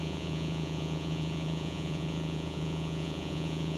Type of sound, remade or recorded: remade